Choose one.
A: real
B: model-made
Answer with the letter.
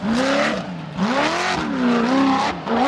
A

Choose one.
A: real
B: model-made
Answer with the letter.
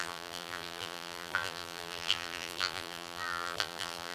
B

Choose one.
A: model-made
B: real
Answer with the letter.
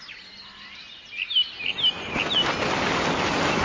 B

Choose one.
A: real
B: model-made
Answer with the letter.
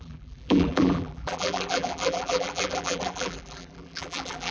B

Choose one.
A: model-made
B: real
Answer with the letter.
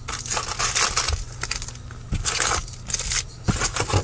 B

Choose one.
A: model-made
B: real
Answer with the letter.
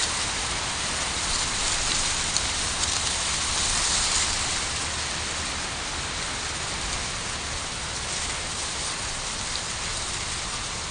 B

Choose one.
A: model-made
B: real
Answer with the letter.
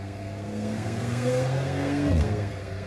A